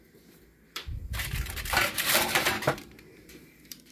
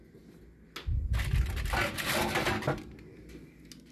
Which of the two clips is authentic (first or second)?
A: second